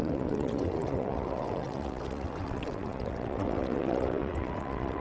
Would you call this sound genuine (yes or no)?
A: no